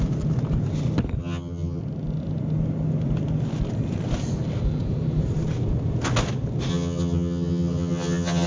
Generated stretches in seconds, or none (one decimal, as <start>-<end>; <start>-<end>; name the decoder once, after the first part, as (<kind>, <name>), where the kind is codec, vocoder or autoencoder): 1.2-1.8 (vocoder, HiFi-GAN); 6.7-8.5